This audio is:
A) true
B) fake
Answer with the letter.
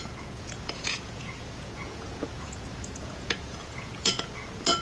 B